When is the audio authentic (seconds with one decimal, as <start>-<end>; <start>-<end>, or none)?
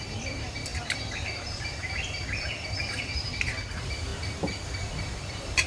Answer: 4.1-4.9